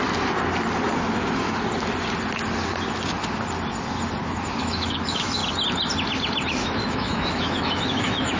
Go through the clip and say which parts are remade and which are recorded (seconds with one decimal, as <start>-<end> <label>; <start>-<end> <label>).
0.0-4.6 recorded; 4.6-5.4 remade; 5.4-6.5 recorded; 6.5-8.4 remade

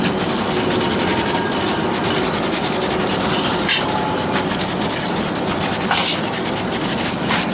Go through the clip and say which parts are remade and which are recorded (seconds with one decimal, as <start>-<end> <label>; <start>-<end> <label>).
0.0-7.5 recorded